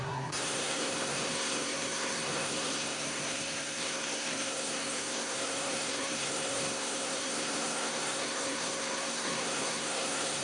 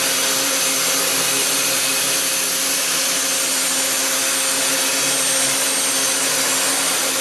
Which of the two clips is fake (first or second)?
first